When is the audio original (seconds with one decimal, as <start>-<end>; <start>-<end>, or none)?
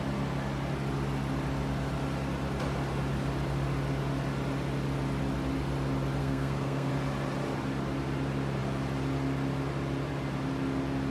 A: 0.0-6.2; 6.9-11.1